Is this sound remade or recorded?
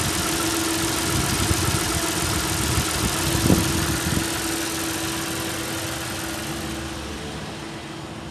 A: recorded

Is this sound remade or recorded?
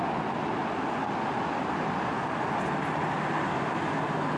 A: recorded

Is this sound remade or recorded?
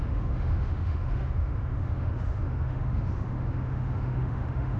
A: remade